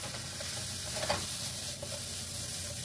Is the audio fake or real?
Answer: real